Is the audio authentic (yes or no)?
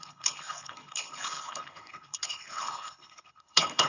no